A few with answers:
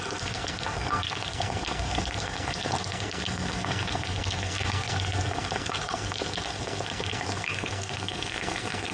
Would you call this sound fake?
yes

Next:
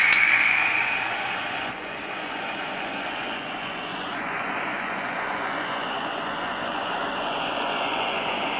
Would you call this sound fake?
yes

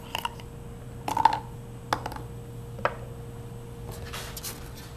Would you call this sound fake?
no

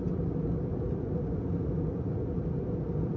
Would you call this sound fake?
no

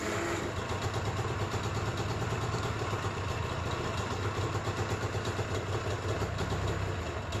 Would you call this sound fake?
no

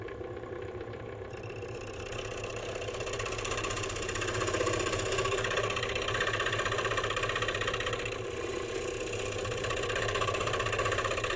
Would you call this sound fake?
yes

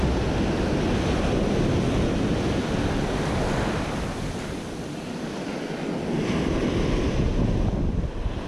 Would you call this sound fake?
no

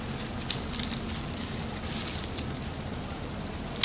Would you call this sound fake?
no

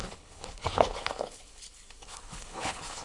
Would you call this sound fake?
yes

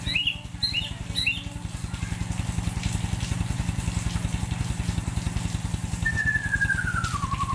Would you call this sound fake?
no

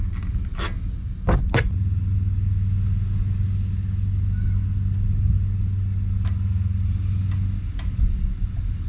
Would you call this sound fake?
no